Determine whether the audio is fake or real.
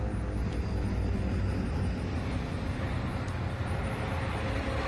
real